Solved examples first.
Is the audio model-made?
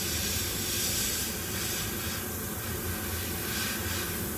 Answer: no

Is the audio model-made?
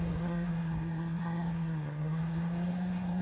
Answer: yes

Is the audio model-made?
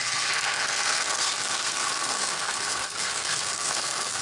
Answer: yes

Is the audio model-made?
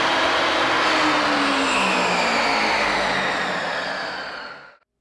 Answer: no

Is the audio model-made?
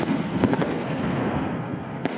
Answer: yes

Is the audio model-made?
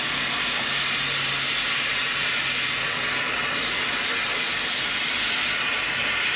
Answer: no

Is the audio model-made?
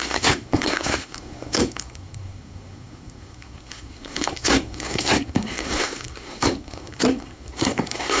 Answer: yes